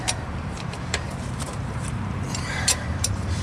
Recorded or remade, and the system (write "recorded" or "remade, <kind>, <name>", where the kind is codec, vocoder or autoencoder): remade, vocoder, BigVGAN v2